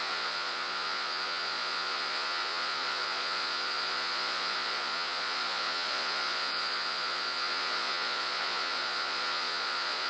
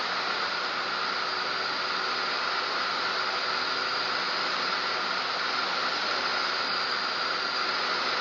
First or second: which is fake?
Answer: first